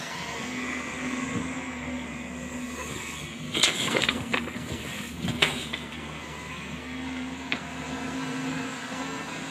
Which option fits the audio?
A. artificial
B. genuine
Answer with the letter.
A